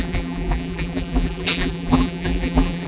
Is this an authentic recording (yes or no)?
no